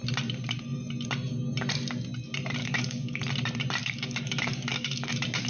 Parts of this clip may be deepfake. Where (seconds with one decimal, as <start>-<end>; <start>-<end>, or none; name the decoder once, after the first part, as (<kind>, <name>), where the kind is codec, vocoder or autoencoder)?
2.6-3.2 (codec, DAC); 3.8-5.1